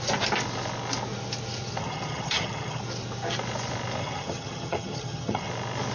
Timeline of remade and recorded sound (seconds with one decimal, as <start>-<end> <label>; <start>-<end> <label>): 0.0-1.8 recorded; 1.8-2.8 remade; 2.8-4.0 recorded; 4.0-5.5 remade; 5.5-5.9 recorded